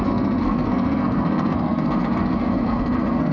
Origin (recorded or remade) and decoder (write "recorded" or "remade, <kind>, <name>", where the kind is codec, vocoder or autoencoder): remade, codec, SNAC